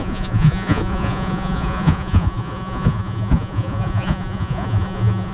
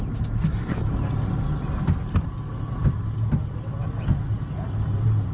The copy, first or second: first